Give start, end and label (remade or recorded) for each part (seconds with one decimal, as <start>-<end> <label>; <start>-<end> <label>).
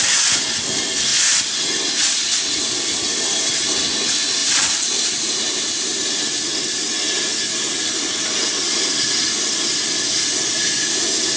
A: 0.0-4.4 recorded; 4.4-6.1 remade; 6.1-11.4 recorded